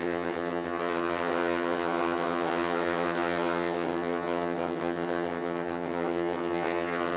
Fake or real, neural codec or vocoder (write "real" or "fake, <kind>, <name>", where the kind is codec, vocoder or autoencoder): fake, vocoder, HiFi-GAN